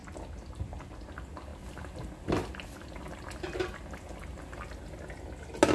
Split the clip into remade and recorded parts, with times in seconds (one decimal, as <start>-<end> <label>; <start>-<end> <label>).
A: 0.0-5.7 recorded

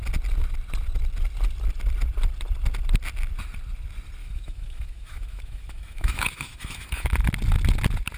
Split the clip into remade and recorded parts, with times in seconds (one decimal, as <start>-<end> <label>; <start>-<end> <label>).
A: 0.0-4.2 recorded; 4.2-7.1 remade; 7.1-8.2 recorded

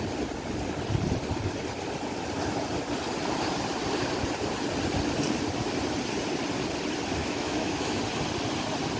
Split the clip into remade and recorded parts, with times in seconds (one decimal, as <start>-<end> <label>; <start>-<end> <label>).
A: 0.0-7.2 recorded; 7.2-8.0 remade; 8.0-9.0 recorded

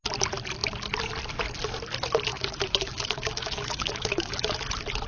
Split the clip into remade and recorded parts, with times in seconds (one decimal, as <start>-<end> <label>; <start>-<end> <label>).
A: 0.0-2.3 recorded; 2.3-4.6 remade; 4.6-5.1 recorded

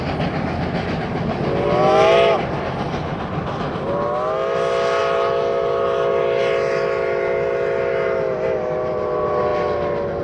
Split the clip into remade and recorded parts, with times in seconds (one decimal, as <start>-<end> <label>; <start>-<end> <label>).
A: 0.0-10.2 recorded

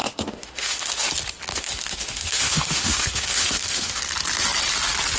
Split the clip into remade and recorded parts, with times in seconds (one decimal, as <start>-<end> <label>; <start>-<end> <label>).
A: 0.0-1.1 remade; 1.1-1.5 recorded; 1.5-4.0 remade; 4.0-5.2 recorded

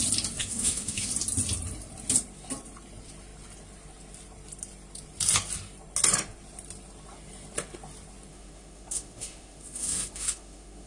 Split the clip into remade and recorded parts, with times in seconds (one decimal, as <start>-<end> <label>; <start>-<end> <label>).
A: 0.0-0.4 recorded; 0.4-1.1 remade; 1.1-8.3 recorded; 8.3-10.9 remade